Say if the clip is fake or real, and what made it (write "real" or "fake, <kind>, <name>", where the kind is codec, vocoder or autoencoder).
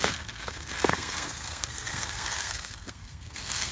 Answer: fake, codec, SNAC